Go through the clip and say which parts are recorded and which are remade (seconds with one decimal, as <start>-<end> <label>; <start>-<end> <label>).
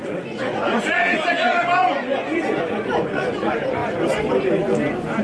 0.0-3.8 remade; 3.8-5.2 recorded